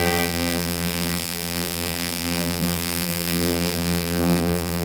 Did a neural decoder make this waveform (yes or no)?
yes